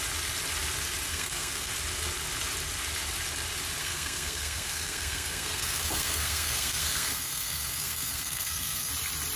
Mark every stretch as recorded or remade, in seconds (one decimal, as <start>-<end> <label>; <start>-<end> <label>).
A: 0.0-1.1 recorded; 1.1-1.7 remade; 1.7-3.8 recorded; 3.8-8.9 remade; 8.9-9.4 recorded